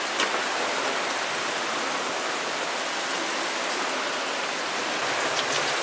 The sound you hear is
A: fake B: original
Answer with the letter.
B